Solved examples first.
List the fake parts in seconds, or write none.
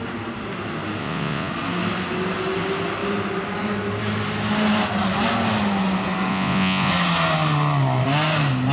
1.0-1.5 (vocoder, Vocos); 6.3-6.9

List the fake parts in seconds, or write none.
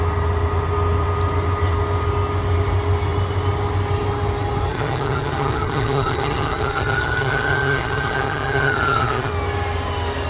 4.7-9.3 (vocoder, HiFi-GAN)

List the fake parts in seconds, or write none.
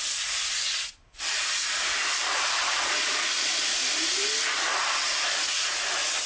1.9-3.3 (vocoder, Vocos)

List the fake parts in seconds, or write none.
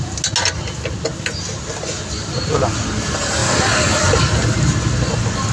none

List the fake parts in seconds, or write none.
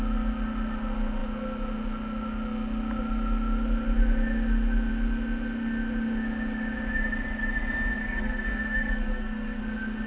8.0-9.6 (codec, SNAC)